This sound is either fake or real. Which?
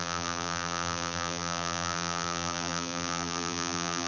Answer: fake